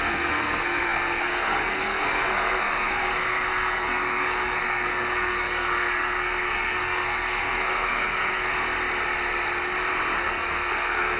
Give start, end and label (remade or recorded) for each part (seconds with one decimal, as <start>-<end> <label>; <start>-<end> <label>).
0.0-8.5 remade; 8.5-10.2 recorded; 10.2-11.2 remade